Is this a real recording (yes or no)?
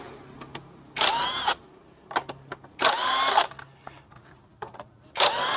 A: yes